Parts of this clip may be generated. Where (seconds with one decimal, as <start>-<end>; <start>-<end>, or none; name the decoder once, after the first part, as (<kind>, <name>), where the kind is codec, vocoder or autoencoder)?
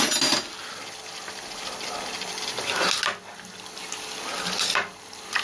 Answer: none